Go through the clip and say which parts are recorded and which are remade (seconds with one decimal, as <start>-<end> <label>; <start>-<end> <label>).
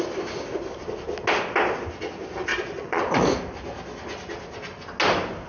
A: 0.0-2.5 recorded; 2.5-3.0 remade; 3.0-5.5 recorded